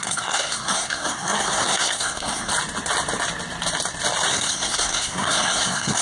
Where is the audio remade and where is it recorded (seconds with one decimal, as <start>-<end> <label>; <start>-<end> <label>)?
0.0-2.5 remade; 2.5-4.3 recorded; 4.3-6.0 remade